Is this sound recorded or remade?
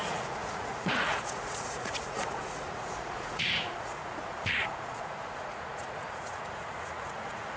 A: remade